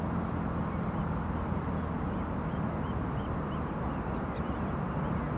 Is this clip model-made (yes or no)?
no